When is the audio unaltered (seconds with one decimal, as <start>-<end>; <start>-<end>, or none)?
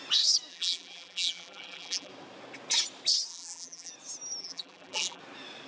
0.0-0.5; 2.1-3.3; 3.9-4.4; 5.2-5.7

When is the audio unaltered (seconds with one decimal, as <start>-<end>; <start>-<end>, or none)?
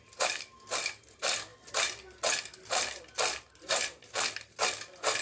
0.0-5.2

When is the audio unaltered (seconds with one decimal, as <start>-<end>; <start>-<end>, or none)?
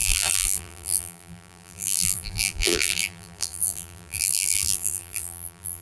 none